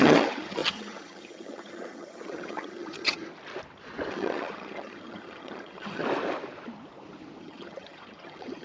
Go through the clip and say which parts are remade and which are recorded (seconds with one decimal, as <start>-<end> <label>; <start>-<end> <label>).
0.0-3.2 remade; 3.2-4.1 recorded; 4.1-6.0 remade; 6.0-7.4 recorded; 7.4-8.6 remade